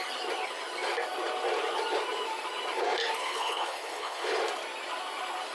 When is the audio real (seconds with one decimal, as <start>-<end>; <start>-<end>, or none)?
0.0-3.2; 4.4-5.5